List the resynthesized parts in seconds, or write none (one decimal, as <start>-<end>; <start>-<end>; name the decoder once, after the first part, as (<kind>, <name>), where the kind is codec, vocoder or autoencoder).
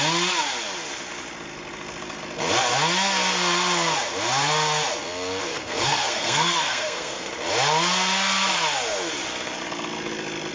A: 5.5-7.3 (codec, SNAC)